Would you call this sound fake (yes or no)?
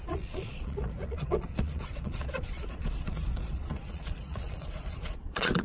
yes